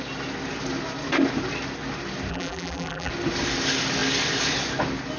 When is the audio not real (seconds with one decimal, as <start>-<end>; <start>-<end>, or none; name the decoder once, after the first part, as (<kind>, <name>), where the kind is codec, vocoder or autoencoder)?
2.3-3.1 (vocoder, BigVGAN v2)